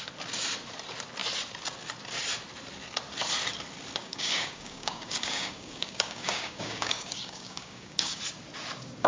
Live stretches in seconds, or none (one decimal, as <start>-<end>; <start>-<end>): 0.0-4.0; 8.2-9.1